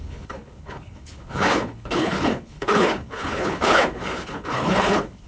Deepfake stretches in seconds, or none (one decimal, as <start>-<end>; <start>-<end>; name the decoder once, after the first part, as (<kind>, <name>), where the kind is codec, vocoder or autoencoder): 0.0-5.3 (codec, HILCodec)